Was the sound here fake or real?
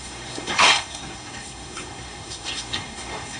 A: fake